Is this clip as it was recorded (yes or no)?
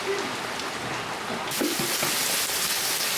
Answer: yes